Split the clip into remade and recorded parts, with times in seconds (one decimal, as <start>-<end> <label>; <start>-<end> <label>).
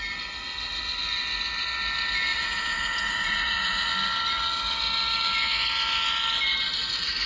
0.0-2.3 recorded; 2.3-3.9 remade; 3.9-7.3 recorded